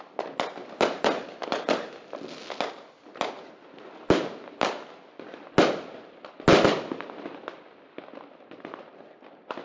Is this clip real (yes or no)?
yes